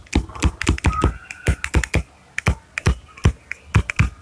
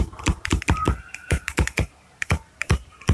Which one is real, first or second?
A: first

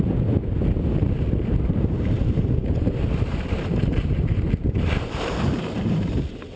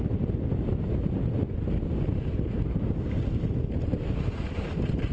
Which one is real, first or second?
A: second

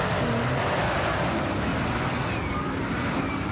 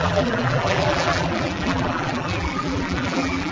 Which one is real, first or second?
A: first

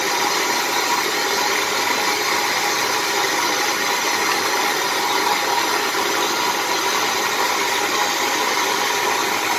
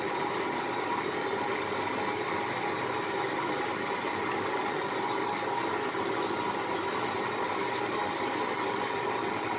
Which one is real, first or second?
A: second